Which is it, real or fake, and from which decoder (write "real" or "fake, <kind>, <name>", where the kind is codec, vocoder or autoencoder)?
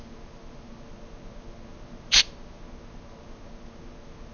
real